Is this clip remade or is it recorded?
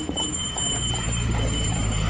remade